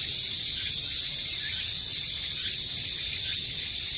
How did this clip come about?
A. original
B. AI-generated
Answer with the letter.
A